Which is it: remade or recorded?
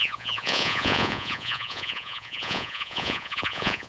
remade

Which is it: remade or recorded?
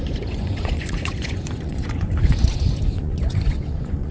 remade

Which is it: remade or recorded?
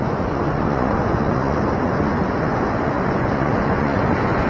remade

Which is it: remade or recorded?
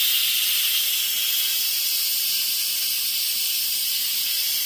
recorded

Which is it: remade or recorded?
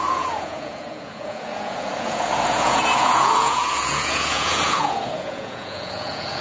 remade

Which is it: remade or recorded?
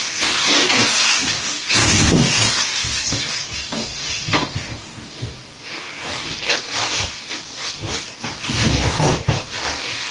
remade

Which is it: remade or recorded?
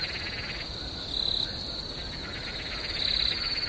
recorded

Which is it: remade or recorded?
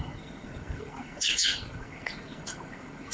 remade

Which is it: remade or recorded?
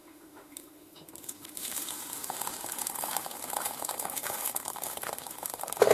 remade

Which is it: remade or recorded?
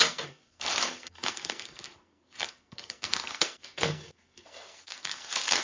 remade